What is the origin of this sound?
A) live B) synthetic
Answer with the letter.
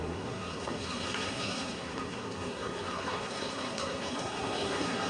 B